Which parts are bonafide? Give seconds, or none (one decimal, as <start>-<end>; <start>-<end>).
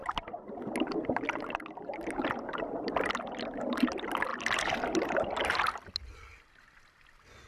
0.0-7.5